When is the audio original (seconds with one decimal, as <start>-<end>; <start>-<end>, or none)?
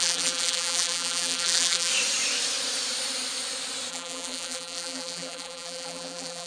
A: 1.9-3.9